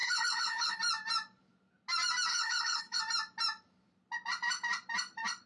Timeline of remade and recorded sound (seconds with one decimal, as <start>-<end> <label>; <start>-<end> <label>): 0.0-0.8 remade; 0.8-2.3 recorded; 2.3-3.0 remade; 3.0-5.5 recorded